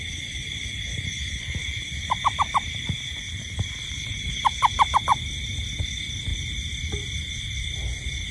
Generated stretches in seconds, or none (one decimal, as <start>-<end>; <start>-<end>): 1.2-4.3; 6.3-8.3